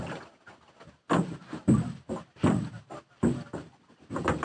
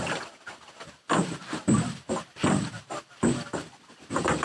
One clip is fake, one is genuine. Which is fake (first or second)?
second